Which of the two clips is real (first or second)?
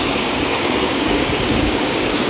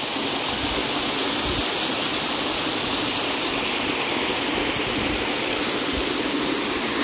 second